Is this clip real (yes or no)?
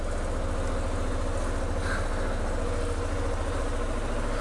yes